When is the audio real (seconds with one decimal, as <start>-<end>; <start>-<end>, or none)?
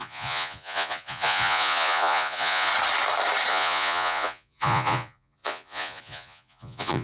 2.7-3.5